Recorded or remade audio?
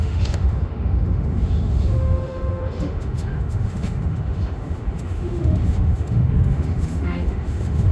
remade